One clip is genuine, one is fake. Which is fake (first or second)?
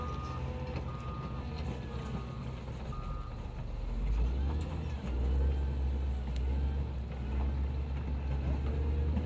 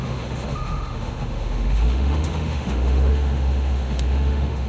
second